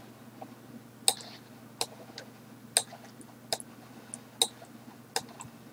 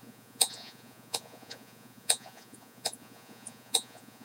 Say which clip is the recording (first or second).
first